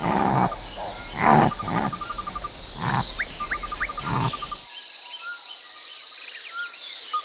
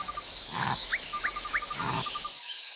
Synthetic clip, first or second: second